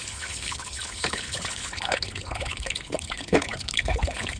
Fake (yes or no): yes